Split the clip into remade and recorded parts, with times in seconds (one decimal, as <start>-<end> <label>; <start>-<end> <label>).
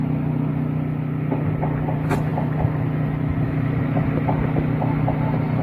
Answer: 0.0-5.6 remade